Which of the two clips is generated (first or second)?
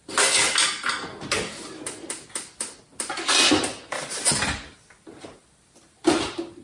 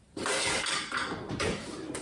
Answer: second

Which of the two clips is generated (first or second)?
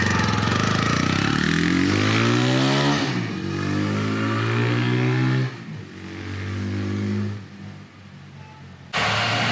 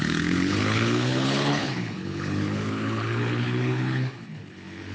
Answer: second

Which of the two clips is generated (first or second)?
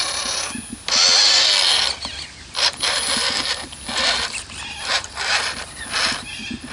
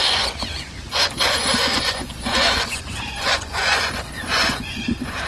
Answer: second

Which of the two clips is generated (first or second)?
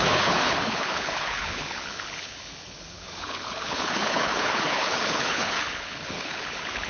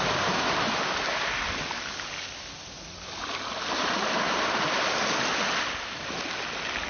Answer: first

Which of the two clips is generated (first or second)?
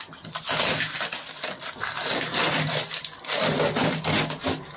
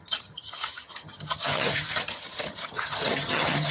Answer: second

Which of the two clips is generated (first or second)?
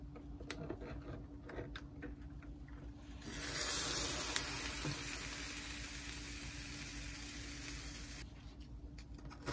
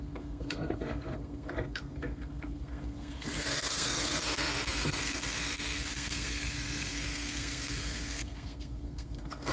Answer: second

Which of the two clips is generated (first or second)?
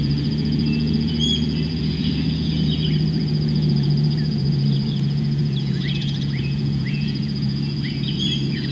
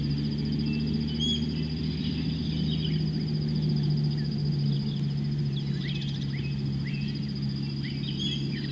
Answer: first